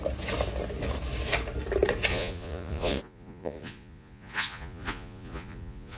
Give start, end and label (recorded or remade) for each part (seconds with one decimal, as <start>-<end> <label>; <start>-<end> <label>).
0.0-2.1 recorded; 2.1-6.0 remade

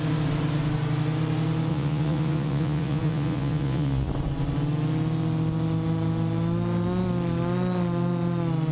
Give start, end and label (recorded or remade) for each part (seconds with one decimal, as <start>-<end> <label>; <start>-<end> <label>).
0.0-1.7 recorded; 1.7-4.1 remade; 4.1-8.7 recorded

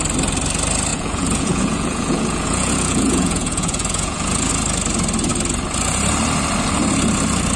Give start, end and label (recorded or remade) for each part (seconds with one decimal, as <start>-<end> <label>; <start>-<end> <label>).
0.0-0.9 recorded; 0.9-4.5 remade; 4.5-7.6 recorded

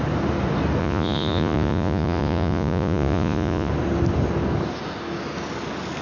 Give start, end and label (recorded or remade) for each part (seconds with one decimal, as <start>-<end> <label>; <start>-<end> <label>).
0.0-0.8 recorded; 0.8-3.7 remade; 3.7-6.0 recorded

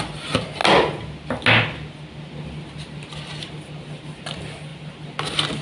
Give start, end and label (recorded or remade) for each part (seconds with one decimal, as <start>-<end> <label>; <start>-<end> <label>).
0.0-5.6 recorded

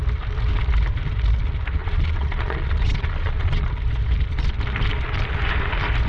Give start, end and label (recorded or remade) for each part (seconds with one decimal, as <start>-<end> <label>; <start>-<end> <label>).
0.0-1.8 recorded; 1.8-3.7 remade; 3.7-6.1 recorded

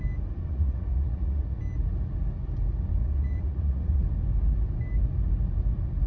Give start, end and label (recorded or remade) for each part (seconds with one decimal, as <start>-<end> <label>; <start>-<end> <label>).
0.0-0.5 recorded; 0.5-1.6 remade; 1.6-3.0 recorded; 3.0-4.1 remade; 4.1-6.1 recorded

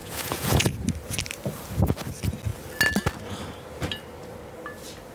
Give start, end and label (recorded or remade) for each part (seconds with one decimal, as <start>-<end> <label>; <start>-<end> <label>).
0.0-0.8 remade; 0.8-5.1 recorded